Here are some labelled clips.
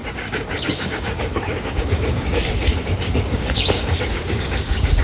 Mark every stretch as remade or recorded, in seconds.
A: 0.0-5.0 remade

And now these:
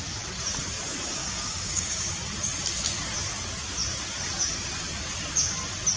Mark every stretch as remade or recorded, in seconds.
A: 0.0-1.2 recorded; 1.2-2.1 remade; 2.1-6.0 recorded